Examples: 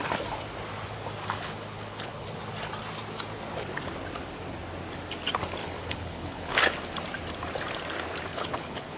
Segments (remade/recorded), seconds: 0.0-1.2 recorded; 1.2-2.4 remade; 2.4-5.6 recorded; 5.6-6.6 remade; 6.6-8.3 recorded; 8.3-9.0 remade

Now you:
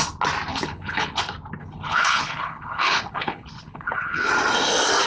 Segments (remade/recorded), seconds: 0.0-0.5 recorded; 0.5-1.2 remade; 1.2-1.6 recorded; 1.6-4.3 remade; 4.3-5.1 recorded